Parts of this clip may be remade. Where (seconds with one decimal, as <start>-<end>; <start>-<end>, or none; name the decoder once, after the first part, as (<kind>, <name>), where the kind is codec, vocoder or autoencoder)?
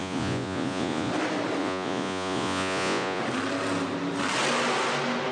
0.0-1.1 (vocoder, Vocos); 1.6-3.2